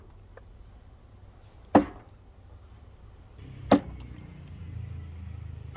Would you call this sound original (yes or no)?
yes